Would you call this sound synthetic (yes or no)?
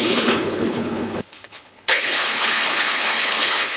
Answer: yes